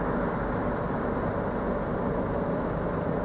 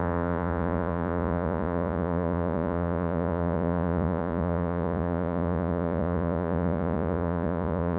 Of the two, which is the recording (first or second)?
first